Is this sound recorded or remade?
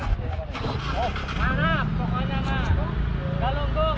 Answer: recorded